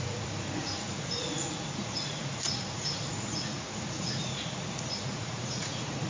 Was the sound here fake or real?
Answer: fake